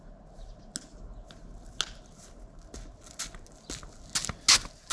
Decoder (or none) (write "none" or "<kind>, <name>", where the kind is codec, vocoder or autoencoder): none